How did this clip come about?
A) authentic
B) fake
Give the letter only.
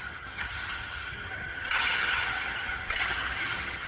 B